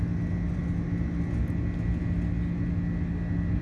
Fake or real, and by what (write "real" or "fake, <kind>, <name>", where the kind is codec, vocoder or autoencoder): real